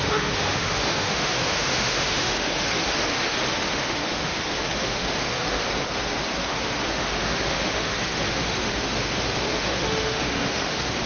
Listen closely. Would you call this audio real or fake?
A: fake